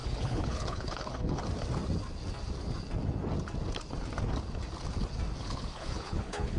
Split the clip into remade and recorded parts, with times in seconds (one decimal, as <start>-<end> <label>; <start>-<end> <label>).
0.0-1.4 remade; 1.4-5.4 recorded; 5.4-6.6 remade